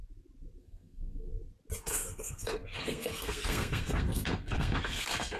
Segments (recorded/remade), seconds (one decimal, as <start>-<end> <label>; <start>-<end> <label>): 0.0-0.6 recorded; 0.6-1.3 remade; 1.3-1.8 recorded; 1.8-5.4 remade